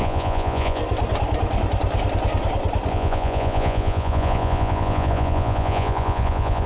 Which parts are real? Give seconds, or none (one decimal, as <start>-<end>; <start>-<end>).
0.8-2.9